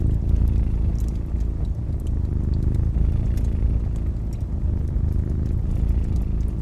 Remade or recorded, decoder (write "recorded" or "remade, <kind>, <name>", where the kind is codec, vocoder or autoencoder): recorded